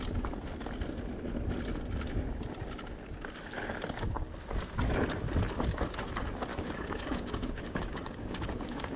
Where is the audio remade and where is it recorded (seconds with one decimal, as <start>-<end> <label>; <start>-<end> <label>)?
0.0-6.5 recorded; 6.5-9.0 remade